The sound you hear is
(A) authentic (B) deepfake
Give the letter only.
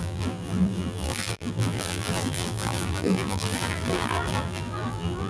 B